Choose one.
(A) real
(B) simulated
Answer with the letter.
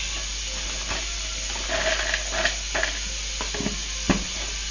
A